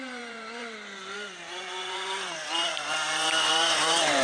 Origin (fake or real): fake